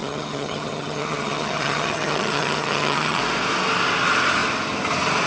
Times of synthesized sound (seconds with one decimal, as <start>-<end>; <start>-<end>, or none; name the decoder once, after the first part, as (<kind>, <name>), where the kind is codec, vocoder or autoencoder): 0.0-3.2 (vocoder, HiFi-GAN)